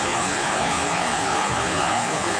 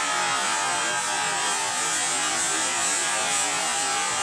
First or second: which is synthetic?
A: first